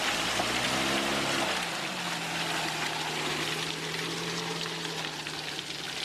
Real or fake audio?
real